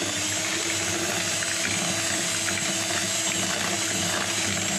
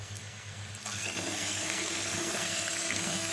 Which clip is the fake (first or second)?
second